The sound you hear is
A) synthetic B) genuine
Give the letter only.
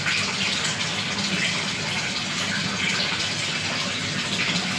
B